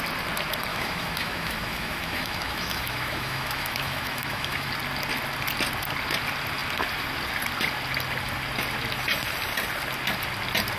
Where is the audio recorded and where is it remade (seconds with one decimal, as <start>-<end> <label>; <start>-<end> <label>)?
0.0-0.7 recorded; 0.7-4.7 remade; 4.7-10.8 recorded